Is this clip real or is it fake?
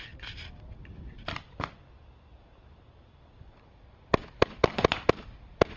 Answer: real